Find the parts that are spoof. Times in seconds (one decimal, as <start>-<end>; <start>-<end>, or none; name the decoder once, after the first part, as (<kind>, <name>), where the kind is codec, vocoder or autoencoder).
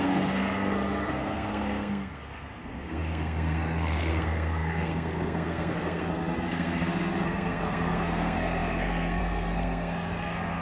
0.0-10.6 (codec, SNAC)